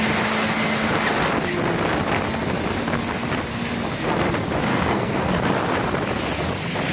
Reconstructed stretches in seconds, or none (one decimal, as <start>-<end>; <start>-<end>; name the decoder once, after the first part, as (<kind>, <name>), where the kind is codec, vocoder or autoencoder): 4.7-5.3 (codec, SNAC)